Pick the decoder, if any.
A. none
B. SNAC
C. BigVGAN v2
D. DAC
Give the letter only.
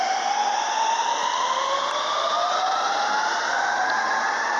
A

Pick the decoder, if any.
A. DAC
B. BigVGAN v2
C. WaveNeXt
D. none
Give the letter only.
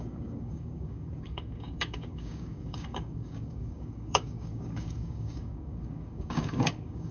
A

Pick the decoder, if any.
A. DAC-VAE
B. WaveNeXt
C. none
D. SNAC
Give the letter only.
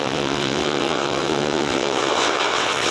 B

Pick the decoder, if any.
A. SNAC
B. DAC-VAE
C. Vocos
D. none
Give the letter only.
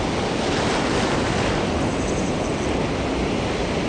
D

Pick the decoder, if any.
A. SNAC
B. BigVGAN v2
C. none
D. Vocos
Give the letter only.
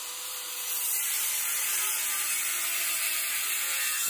B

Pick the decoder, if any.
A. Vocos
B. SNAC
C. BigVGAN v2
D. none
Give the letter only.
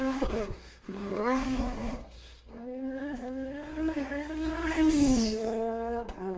B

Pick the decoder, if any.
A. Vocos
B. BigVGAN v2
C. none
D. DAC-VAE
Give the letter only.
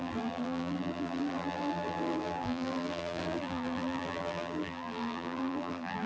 B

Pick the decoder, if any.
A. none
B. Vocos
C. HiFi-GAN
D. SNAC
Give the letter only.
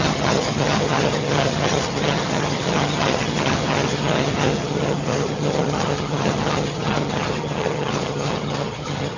C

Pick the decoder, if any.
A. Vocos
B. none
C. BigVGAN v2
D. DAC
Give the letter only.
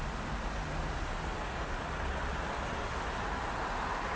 B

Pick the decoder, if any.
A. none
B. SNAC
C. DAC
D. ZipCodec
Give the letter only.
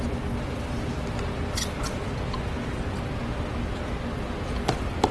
A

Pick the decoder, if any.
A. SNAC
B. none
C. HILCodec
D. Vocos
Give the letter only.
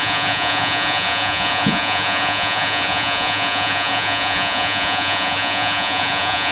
D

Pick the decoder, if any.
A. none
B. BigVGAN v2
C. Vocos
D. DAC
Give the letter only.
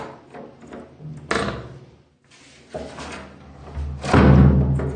A